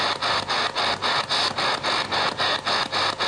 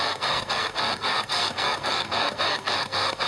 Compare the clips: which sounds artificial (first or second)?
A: second